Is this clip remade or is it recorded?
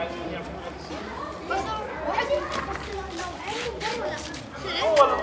recorded